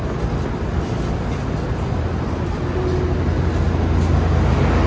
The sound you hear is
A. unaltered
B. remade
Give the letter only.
A